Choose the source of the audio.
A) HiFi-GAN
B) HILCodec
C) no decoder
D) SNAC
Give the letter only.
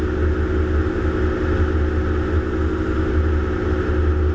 C